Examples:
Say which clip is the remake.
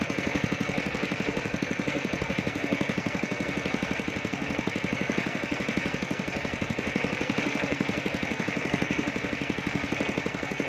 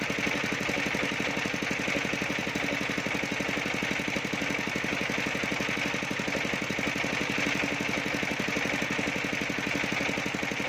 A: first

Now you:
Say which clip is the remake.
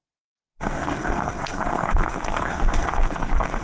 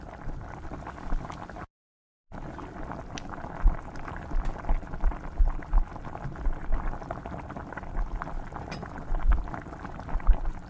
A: first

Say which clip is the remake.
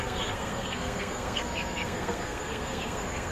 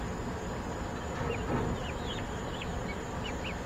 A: first